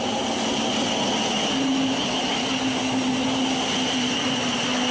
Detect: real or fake real